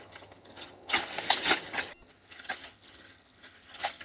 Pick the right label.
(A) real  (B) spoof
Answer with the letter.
B